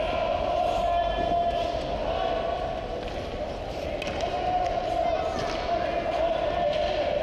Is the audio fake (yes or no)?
no